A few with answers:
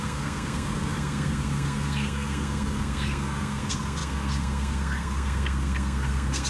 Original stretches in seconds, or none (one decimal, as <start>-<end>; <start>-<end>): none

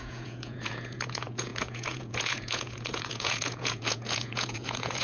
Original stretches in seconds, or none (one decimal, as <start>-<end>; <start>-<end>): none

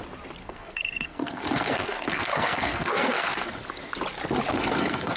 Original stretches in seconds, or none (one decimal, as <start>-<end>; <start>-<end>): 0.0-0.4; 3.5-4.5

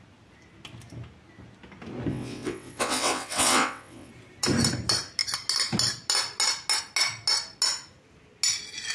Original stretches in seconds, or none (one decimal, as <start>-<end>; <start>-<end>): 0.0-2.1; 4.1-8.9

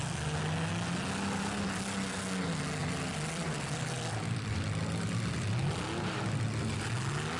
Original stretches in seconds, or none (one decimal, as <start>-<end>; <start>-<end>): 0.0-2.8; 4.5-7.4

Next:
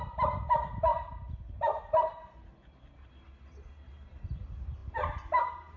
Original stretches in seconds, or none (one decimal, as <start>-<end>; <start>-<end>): 0.0-5.8

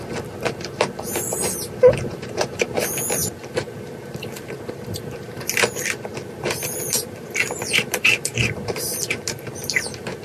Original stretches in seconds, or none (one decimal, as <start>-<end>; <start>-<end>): none